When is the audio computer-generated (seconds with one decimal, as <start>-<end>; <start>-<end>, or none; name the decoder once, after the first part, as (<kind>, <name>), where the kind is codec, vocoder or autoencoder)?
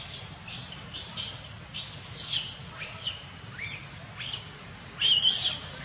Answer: none